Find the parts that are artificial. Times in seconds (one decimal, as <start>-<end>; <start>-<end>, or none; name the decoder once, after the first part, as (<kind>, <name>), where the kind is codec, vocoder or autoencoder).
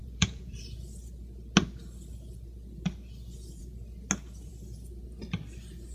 0.0-0.6 (vocoder, Vocos)